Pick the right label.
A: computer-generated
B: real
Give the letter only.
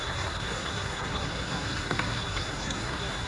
A